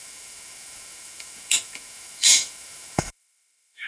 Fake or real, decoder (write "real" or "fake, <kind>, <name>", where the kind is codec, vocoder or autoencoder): fake, autoencoder, DAC-VAE